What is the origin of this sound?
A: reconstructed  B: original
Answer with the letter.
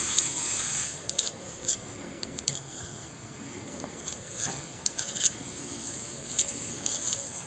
A